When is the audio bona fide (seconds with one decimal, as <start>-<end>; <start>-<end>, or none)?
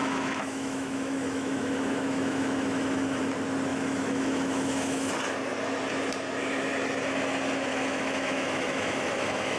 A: 3.2-3.7; 5.1-7.7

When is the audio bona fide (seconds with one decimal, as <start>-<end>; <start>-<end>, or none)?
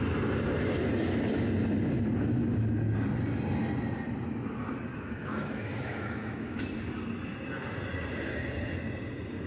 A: 0.0-4.9; 6.6-9.5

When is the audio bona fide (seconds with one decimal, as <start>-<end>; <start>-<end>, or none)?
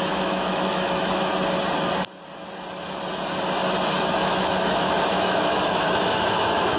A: 1.3-4.0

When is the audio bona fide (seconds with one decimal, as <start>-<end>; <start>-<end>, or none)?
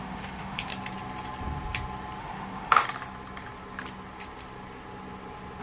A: 0.7-2.2; 2.8-5.6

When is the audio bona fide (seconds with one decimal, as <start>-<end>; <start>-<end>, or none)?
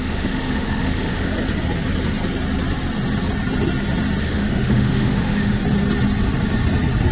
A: 1.3-4.2; 5.6-7.1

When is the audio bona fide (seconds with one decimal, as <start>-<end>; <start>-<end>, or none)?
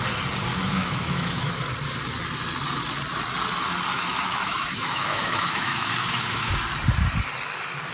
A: 0.0-0.5; 1.6-3.9; 6.5-7.9